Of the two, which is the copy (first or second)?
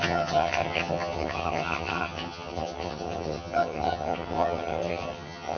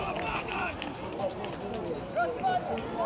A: first